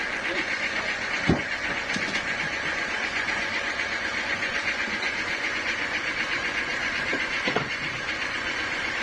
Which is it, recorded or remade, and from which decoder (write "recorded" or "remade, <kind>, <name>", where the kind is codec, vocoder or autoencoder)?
remade, vocoder, Vocos